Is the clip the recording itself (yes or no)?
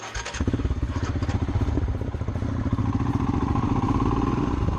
yes